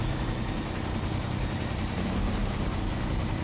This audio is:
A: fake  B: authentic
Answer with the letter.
A